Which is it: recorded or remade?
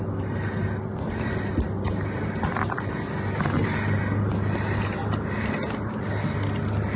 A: recorded